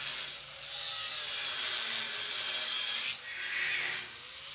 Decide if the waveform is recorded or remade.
recorded